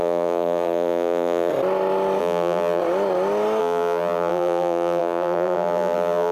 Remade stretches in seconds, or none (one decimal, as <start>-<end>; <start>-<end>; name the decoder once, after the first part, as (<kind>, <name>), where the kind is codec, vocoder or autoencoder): 0.0-1.5 (vocoder, BigVGAN v2); 2.2-2.8; 3.6-6.3